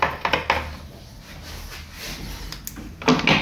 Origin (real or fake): real